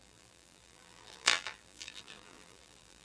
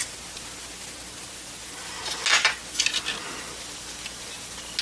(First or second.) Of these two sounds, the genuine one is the second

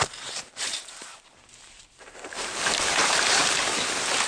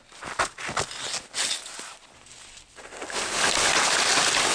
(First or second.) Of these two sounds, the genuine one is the second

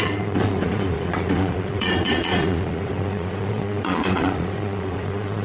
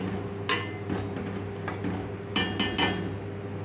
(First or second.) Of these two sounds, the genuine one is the second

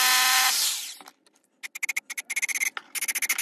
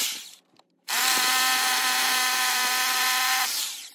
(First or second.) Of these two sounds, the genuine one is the first